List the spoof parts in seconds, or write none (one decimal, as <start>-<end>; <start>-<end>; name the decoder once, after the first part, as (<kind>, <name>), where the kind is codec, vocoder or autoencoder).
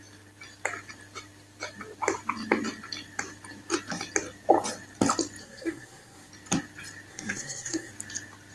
5.4-6.3 (codec, SNAC); 7.1-7.9